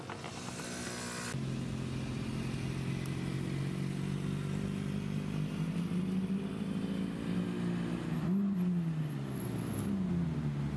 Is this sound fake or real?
real